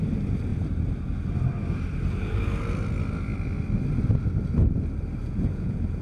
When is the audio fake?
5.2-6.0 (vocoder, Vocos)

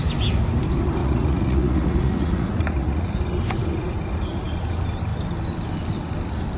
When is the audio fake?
1.0-3.2 (vocoder, Vocos)